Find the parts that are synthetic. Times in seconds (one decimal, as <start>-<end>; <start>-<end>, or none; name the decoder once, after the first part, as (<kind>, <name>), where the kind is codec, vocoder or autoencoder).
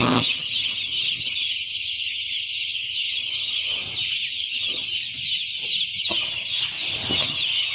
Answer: 0.0-3.8 (vocoder, HiFi-GAN); 4.3-4.8; 6.0-6.6; 7.2-7.7